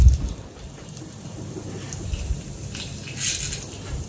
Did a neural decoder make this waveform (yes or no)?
no